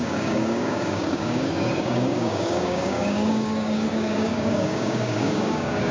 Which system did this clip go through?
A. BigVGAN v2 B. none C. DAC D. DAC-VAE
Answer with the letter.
C